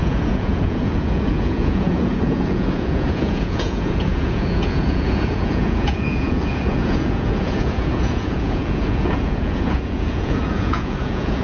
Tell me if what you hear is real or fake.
fake